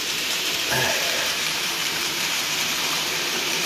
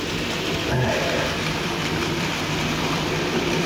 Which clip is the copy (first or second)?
first